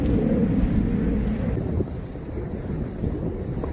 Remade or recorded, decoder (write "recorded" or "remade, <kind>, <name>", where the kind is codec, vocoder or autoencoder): recorded